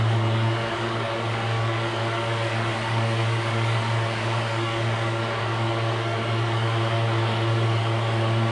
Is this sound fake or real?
fake